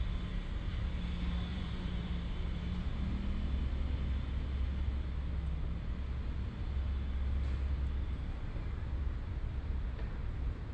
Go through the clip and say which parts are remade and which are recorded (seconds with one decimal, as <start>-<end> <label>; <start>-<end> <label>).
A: 0.0-1.5 recorded; 1.5-2.1 remade; 2.1-10.7 recorded